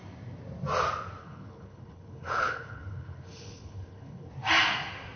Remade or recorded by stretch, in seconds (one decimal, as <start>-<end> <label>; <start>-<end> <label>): 0.0-1.2 recorded; 1.2-4.3 remade; 4.3-5.2 recorded